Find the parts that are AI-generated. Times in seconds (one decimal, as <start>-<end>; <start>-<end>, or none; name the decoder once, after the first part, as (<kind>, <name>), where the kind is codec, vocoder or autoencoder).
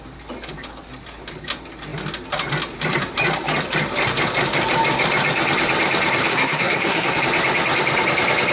6.3-7.2 (codec, SNAC)